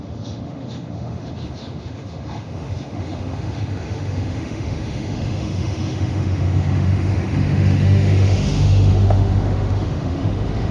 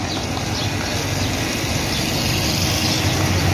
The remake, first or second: first